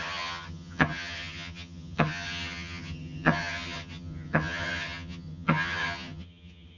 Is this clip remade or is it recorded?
remade